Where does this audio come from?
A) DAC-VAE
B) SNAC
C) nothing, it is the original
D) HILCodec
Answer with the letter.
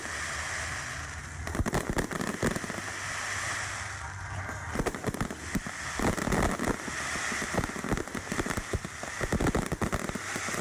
C